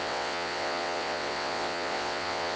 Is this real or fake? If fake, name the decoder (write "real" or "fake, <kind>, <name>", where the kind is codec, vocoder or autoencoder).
fake, vocoder, WaveNeXt